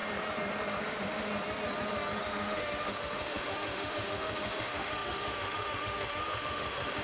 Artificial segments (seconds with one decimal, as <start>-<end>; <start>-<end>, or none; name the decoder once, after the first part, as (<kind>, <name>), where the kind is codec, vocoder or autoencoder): 0.8-1.3 (autoencoder, DAC-VAE); 2.2-7.0